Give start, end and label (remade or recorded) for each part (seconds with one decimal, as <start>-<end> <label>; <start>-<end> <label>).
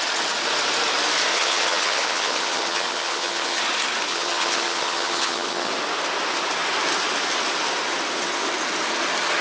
0.0-1.3 recorded; 1.3-3.6 remade; 3.6-4.1 recorded; 4.1-5.7 remade; 5.7-9.4 recorded